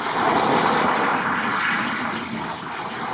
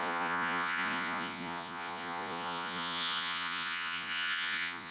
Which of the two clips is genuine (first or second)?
first